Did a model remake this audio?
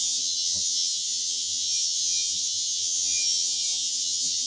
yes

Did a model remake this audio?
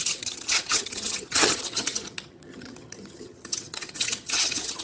yes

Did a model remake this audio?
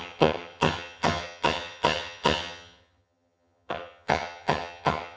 yes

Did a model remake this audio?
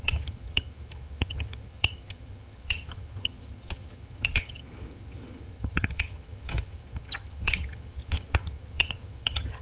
yes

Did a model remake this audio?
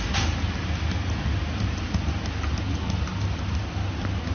no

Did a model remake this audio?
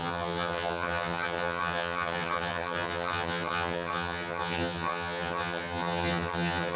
yes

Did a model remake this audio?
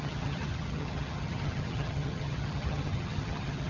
yes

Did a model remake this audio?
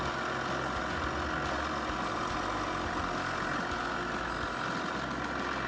no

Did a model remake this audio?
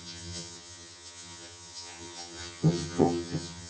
yes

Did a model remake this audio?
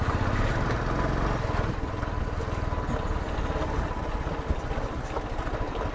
no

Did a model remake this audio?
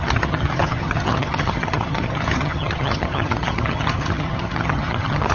yes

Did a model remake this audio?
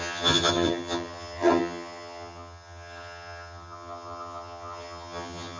yes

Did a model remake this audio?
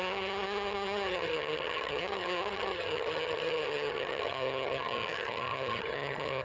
yes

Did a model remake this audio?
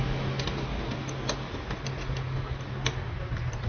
no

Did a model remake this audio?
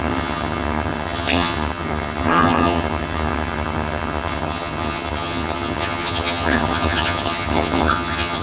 yes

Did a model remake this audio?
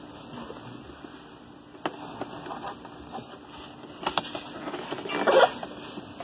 no